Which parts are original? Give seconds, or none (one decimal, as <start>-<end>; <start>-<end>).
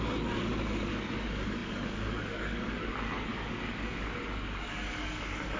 none